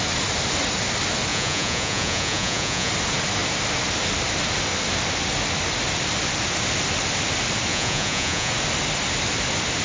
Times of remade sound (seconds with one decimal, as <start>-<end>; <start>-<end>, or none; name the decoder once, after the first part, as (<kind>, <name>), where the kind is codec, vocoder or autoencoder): 1.3-2.9 (vocoder, Vocos); 7.7-8.5